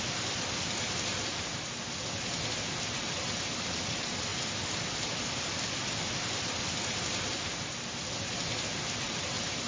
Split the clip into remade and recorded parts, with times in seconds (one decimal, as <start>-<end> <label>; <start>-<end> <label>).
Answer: 0.0-9.7 recorded